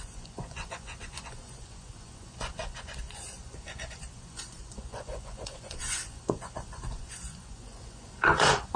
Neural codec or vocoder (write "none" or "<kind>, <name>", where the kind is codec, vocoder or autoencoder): vocoder, Vocos